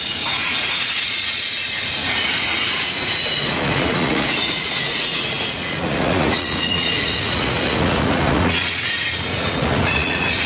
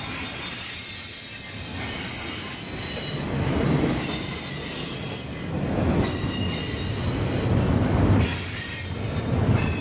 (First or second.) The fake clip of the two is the first